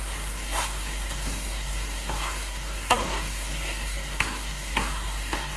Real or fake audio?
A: fake